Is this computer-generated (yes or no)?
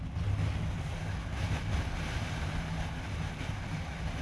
no